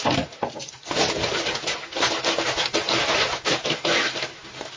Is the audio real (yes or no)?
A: yes